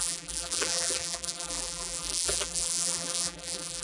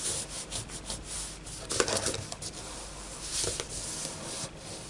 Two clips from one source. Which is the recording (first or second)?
second